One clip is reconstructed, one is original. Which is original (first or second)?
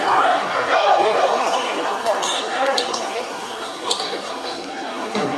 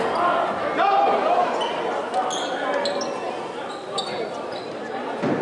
second